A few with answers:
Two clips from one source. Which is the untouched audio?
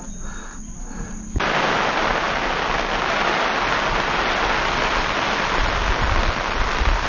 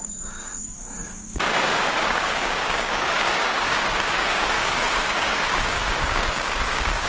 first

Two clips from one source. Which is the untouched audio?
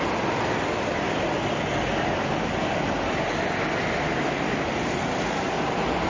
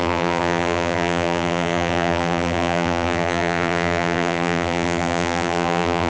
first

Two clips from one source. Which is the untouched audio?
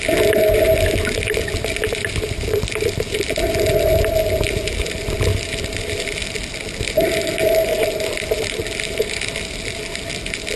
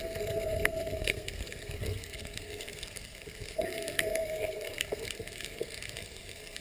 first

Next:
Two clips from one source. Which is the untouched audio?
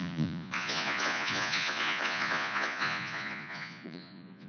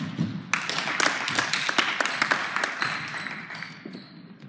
second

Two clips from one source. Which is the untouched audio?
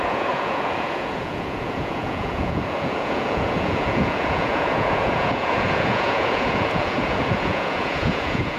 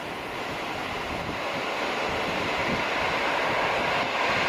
second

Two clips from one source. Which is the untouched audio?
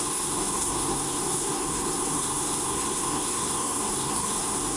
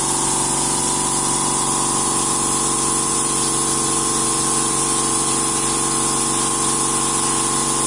second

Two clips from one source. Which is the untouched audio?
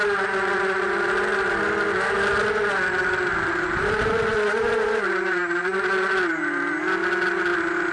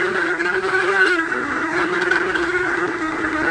first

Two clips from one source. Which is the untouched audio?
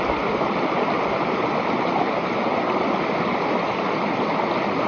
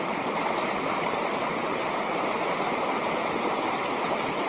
first